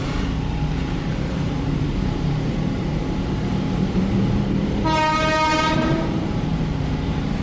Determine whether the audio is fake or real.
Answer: fake